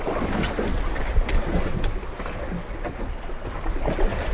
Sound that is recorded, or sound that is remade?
recorded